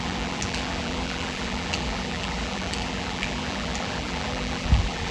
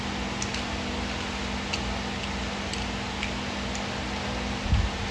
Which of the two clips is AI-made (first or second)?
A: first